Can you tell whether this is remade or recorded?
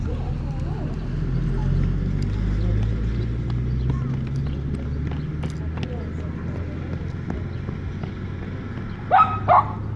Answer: recorded